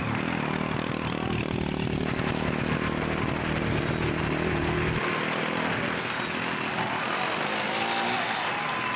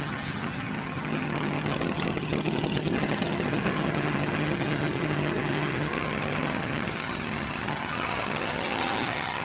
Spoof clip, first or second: second